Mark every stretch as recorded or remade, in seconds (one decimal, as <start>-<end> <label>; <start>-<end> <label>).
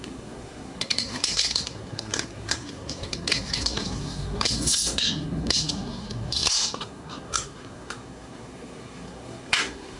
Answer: 0.0-10.0 remade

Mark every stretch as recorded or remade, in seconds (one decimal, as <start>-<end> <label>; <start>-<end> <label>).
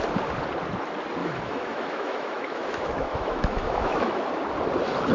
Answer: 0.0-1.2 recorded; 1.2-4.3 remade; 4.3-5.1 recorded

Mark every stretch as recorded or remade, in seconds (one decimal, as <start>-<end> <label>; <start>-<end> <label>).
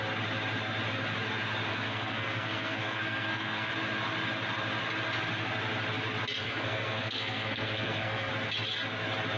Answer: 0.0-1.7 recorded; 1.7-3.7 remade; 3.7-6.4 recorded; 6.4-8.3 remade; 8.3-9.4 recorded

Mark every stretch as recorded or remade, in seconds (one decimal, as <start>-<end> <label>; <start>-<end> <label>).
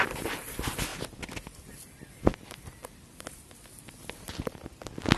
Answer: 0.0-5.2 recorded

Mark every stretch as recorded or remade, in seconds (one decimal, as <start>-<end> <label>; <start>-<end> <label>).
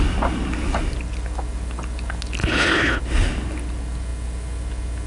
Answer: 0.0-2.4 recorded; 2.4-3.0 remade; 3.0-5.1 recorded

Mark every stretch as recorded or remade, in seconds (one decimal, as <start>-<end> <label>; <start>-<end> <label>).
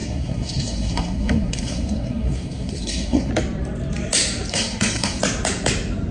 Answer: 0.0-3.3 remade; 3.3-4.5 recorded; 4.5-5.2 remade; 5.2-6.1 recorded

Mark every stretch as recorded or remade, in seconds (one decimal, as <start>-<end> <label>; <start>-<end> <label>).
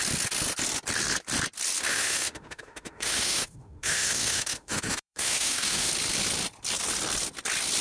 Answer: 0.0-1.9 recorded; 1.9-5.9 remade; 5.9-7.8 recorded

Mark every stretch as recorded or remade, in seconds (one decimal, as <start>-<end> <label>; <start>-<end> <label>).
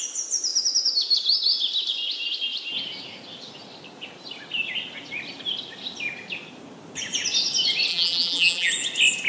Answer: 0.0-7.9 recorded; 7.9-8.7 remade; 8.7-9.3 recorded